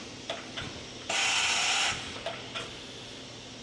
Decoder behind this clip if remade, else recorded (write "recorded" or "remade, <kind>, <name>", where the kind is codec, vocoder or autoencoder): remade, vocoder, BigVGAN v2